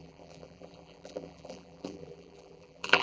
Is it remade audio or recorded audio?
remade